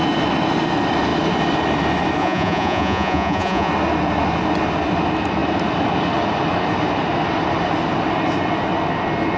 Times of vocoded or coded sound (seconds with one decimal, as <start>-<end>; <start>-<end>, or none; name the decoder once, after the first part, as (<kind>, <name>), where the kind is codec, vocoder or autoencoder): 2.2-3.7 (vocoder, Vocos)